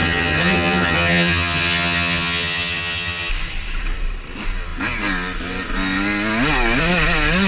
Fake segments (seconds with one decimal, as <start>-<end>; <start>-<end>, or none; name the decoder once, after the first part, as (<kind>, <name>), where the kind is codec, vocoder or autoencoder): 0.0-3.3 (vocoder, HiFi-GAN)